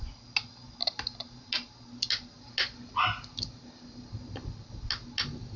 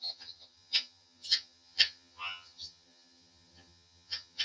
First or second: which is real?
first